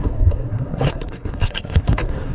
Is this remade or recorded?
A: remade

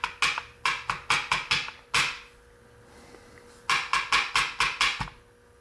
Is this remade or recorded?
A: recorded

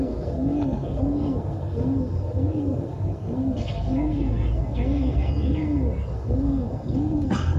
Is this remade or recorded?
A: remade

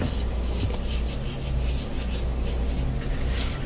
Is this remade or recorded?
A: recorded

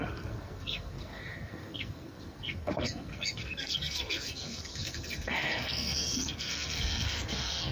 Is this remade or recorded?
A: remade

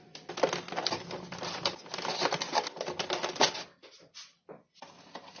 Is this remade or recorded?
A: recorded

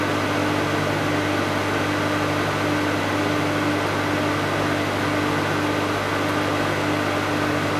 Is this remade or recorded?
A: recorded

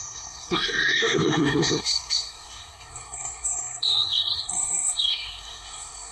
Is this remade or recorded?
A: remade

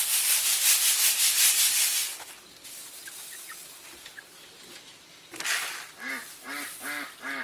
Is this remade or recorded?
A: recorded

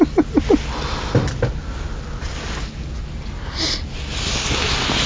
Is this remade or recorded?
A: recorded